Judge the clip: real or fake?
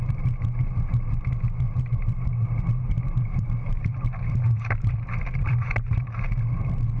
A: fake